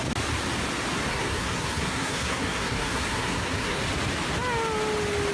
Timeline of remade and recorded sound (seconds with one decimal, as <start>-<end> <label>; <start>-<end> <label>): 0.0-1.1 recorded; 1.1-3.8 remade; 3.8-5.3 recorded